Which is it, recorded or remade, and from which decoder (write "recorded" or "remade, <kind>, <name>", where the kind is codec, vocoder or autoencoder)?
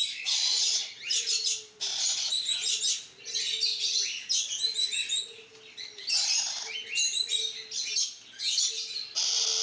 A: recorded